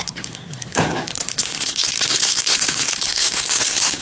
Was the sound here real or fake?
fake